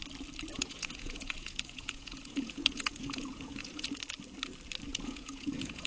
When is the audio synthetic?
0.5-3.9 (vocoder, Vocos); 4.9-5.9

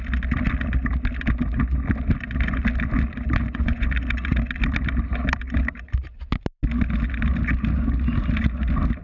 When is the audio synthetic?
3.4-3.9 (vocoder, Vocos)